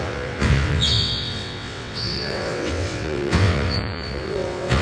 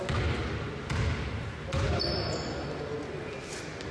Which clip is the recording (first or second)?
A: second